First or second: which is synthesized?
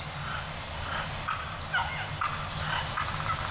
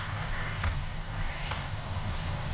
second